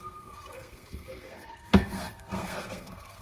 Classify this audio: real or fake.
fake